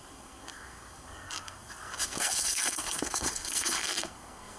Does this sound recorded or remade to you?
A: remade